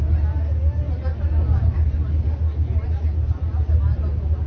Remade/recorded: recorded